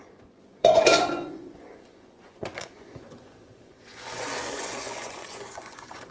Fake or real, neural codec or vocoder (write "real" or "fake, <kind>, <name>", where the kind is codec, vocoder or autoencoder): fake, vocoder, Vocos